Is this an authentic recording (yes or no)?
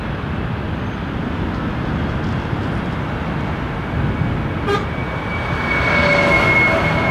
yes